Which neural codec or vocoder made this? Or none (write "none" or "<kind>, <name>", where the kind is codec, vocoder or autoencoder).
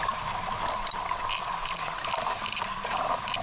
none